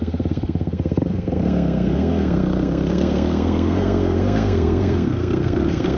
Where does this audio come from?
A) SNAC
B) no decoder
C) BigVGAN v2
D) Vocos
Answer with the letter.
A